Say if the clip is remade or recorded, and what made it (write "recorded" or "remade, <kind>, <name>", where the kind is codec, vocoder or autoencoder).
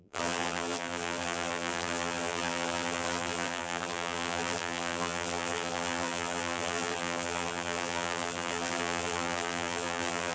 remade, vocoder, BigVGAN v2